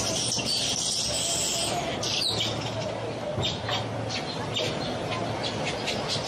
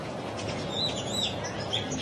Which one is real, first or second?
first